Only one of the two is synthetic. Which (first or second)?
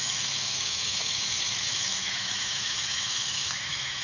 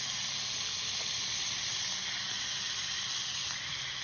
first